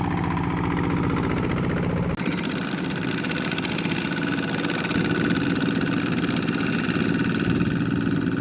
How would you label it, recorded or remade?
recorded